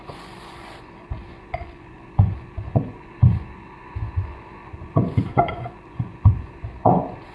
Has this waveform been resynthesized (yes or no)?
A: yes